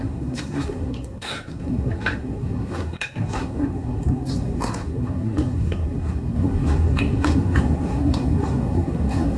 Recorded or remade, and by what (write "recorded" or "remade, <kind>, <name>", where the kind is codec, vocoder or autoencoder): remade, codec, SNAC